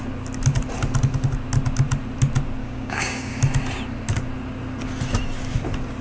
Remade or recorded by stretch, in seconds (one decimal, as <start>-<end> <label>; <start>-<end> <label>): 0.0-2.6 recorded; 2.6-3.4 remade; 3.4-6.0 recorded